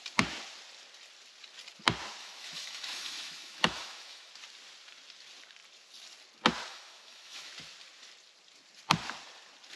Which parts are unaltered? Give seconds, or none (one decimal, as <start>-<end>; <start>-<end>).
0.0-2.2; 4.3-6.7; 7.5-9.8